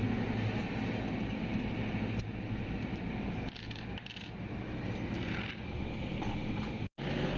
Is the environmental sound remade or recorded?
recorded